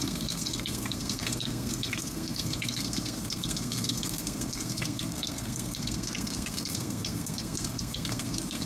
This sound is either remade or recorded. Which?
remade